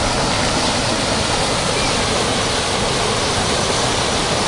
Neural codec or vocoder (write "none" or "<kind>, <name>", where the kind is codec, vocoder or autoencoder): none